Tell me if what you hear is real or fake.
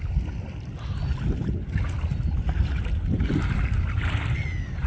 real